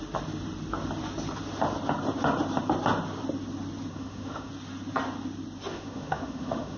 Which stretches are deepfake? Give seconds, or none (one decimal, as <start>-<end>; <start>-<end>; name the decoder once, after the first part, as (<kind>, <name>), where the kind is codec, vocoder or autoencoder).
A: 3.9-4.5 (autoencoder, DAC-VAE); 5.7-6.8

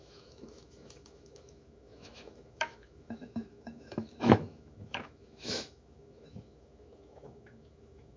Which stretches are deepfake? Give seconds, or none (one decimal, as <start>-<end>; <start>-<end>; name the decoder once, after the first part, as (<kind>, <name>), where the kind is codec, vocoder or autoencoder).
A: 0.0-8.2 (autoencoder, DAC-VAE)

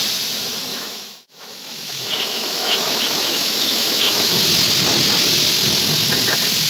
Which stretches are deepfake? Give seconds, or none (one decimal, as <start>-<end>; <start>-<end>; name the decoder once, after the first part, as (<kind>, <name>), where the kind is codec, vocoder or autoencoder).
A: 0.7-4.4 (autoencoder, DAC-VAE)

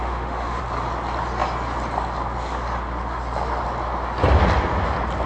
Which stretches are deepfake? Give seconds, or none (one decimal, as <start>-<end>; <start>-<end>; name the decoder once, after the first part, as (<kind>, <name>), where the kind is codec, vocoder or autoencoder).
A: 0.0-0.6 (autoencoder, DAC-VAE)

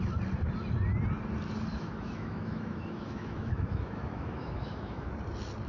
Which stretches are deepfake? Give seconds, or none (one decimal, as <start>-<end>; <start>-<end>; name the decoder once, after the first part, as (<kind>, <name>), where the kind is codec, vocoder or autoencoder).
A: 1.7-5.1 (autoencoder, DAC-VAE)

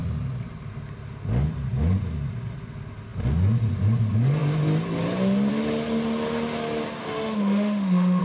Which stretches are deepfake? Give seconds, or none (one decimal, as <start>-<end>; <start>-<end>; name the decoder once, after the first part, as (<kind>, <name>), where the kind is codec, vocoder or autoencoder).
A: 7.0-8.2 (autoencoder, DAC-VAE)

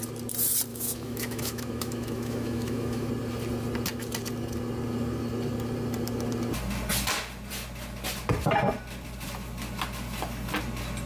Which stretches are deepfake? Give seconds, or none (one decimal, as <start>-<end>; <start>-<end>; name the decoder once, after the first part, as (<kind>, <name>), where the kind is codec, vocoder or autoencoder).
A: 0.7-3.1 (autoencoder, DAC-VAE)

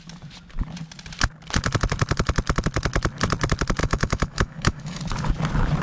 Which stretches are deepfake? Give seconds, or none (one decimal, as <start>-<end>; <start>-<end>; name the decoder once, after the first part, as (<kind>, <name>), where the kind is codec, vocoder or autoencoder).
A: 3.8-5.0 (autoencoder, DAC-VAE)